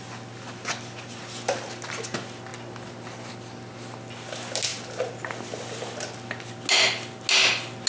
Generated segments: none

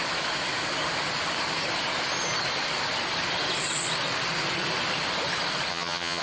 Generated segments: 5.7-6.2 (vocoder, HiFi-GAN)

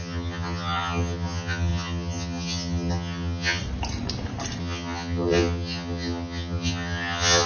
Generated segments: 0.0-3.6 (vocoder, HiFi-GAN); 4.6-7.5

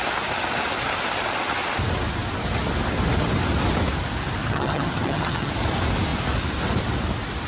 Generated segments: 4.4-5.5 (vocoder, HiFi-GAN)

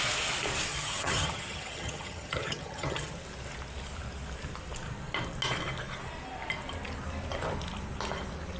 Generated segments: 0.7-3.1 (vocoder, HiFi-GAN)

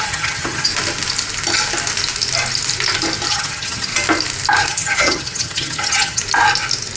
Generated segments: 0.0-0.7 (vocoder, HiFi-GAN); 3.3-3.9; 4.7-6.2

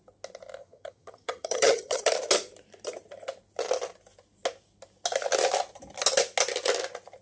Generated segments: 0.6-2.0 (vocoder, HiFi-GAN)